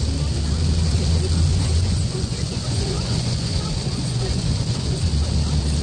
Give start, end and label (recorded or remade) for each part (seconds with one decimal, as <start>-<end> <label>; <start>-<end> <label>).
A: 0.0-1.5 recorded; 1.5-5.0 remade; 5.0-5.8 recorded